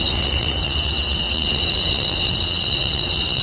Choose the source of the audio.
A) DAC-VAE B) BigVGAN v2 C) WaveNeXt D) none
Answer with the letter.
C